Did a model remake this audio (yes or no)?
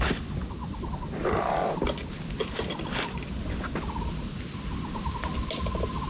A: no